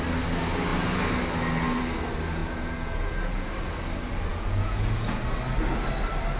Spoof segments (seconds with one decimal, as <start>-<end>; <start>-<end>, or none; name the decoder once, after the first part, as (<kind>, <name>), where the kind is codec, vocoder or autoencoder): 2.4-3.5 (vocoder, Vocos); 4.3-5.2

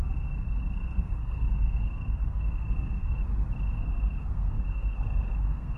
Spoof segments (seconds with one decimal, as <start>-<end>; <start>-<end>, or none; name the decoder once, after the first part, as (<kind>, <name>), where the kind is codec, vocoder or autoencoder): 0.0-3.2 (codec, SNAC); 3.8-5.8

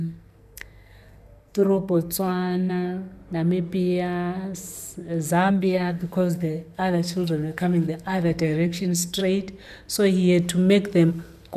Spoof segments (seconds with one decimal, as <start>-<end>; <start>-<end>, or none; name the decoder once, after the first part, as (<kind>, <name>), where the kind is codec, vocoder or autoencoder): 0.0-3.2 (codec, SNAC); 5.5-9.2; 11.1-11.6